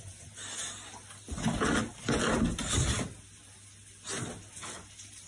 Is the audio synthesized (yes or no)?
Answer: no